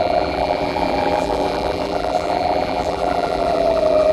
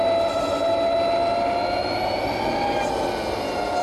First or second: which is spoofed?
first